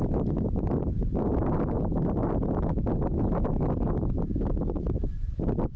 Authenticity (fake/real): real